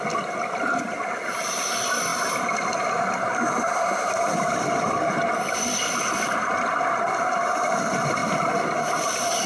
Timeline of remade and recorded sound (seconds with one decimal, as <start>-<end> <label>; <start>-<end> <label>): 0.0-9.5 recorded